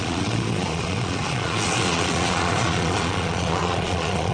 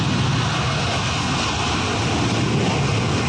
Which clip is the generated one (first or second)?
first